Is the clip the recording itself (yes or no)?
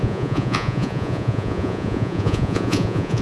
no